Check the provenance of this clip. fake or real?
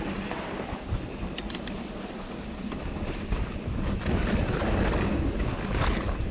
real